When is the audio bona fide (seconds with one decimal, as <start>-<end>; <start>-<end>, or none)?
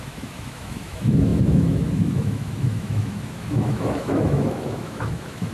none